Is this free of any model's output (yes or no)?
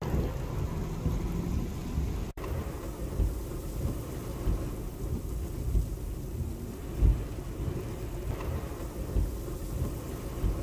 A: yes